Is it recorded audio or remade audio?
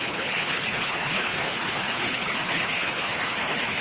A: remade